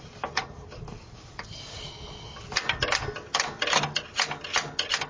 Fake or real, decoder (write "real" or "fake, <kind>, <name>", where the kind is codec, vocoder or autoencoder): real